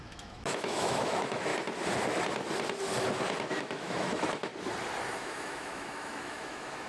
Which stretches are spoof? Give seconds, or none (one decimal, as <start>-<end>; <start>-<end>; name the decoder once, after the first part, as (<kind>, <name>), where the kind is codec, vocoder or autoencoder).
0.0-1.5 (autoencoder, DAC-VAE); 3.5-4.5; 5.2-6.9